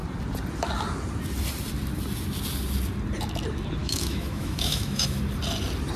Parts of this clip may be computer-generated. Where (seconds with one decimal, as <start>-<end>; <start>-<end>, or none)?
3.8-5.2